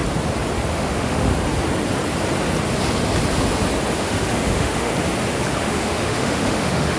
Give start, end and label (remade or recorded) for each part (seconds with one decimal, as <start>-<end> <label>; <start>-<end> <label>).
0.0-0.7 recorded; 0.7-1.3 remade; 1.3-3.9 recorded; 3.9-4.9 remade; 4.9-5.6 recorded; 5.6-7.0 remade